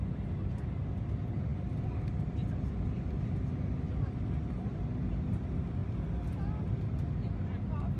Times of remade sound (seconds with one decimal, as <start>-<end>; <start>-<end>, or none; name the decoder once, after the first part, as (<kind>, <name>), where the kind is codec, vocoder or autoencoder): none